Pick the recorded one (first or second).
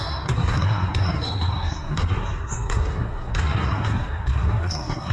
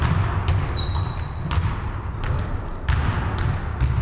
second